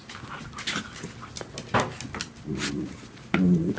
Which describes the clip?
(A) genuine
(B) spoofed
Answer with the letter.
A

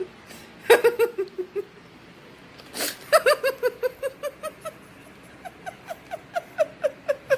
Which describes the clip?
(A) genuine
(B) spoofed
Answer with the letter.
A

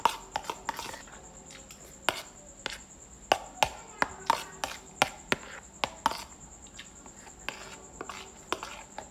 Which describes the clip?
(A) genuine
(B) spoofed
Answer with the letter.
A